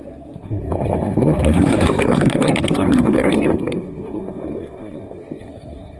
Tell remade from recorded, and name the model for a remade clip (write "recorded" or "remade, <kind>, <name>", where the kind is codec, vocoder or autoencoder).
remade, codec, SNAC